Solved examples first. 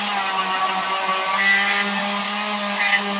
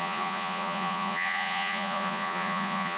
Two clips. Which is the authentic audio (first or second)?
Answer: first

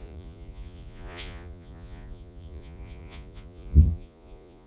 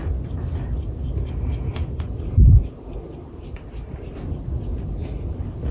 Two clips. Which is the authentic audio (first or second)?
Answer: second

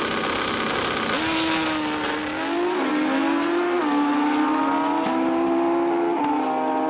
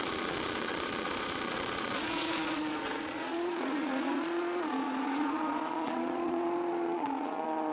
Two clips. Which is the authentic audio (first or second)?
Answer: first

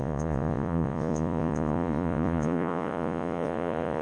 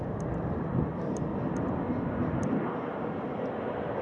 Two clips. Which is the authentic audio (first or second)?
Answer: second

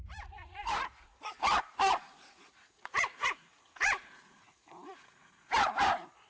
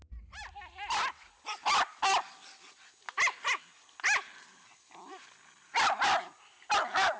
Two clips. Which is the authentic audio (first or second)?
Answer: second